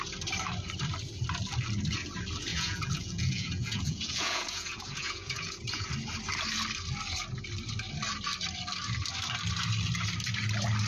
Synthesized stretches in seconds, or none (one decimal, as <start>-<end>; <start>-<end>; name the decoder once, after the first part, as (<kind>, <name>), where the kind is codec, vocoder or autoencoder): 2.5-5.9 (vocoder, Vocos)